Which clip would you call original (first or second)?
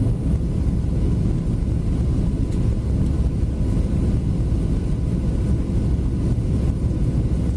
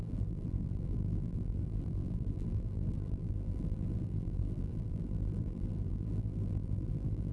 first